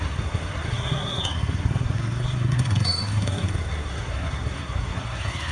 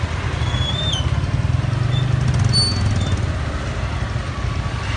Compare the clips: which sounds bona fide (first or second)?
second